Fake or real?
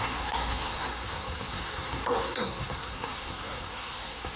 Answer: fake